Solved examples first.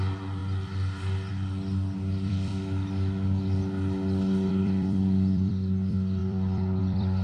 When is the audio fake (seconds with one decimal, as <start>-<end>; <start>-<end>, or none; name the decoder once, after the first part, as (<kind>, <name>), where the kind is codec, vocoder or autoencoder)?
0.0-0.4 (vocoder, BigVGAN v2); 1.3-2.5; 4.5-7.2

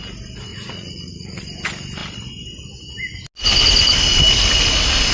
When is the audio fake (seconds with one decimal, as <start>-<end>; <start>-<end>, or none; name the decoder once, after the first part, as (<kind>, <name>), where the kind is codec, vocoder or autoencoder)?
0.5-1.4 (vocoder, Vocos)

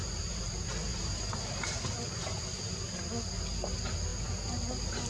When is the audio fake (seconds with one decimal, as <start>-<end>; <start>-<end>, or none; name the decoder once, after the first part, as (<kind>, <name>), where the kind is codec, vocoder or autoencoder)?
0.0-0.5 (vocoder, BigVGAN v2); 0.9-1.7